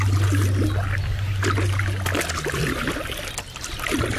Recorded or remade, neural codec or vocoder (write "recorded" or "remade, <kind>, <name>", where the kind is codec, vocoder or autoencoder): recorded